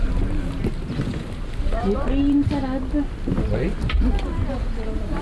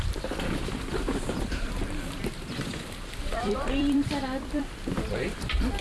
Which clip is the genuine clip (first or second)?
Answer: first